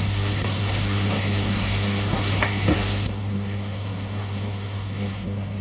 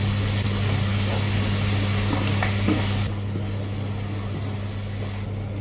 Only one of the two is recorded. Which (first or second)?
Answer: second